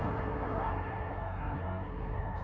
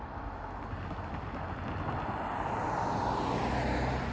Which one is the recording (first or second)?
second